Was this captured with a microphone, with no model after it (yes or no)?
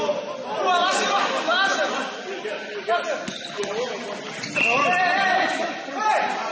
yes